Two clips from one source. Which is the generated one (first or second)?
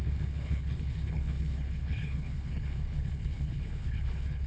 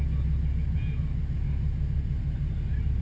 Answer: first